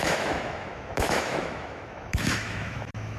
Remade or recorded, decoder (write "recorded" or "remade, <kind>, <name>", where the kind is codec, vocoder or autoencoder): remade, autoencoder, DAC-VAE